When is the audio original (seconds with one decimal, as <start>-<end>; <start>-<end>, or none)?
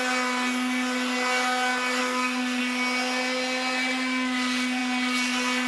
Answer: 0.0-2.0; 2.6-5.7